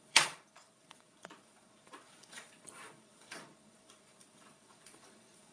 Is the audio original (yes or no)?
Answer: no